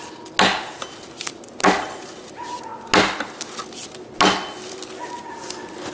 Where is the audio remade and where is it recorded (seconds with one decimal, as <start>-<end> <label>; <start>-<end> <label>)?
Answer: 0.0-5.9 recorded